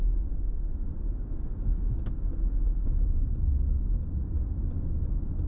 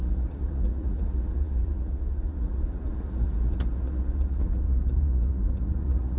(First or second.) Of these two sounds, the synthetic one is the second